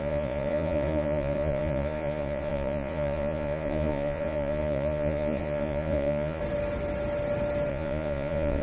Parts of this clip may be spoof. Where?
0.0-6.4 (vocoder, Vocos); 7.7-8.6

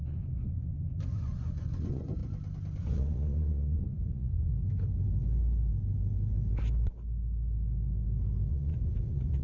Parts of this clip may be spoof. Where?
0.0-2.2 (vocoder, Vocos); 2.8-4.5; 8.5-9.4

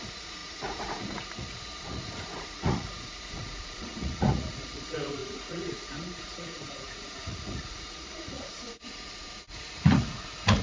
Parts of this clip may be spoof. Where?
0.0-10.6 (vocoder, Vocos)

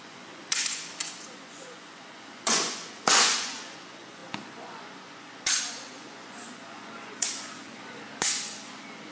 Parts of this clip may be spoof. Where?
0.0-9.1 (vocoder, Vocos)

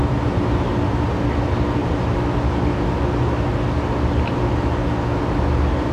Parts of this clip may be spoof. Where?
none

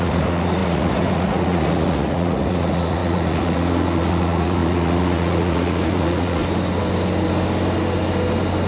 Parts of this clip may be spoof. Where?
0.0-6.4 (vocoder, Vocos)

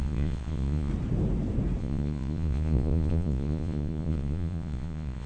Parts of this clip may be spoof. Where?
0.0-0.9 (vocoder, Vocos); 1.8-5.3